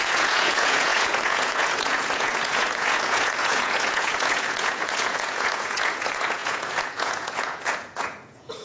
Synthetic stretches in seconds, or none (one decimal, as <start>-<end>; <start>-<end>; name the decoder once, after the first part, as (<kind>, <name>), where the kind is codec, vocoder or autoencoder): 0.0-8.6 (vocoder, Vocos)